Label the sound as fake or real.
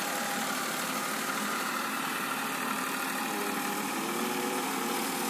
fake